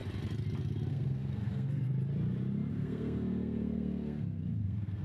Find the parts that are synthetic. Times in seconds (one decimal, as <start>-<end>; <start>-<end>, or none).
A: 0.9-1.9; 2.7-5.0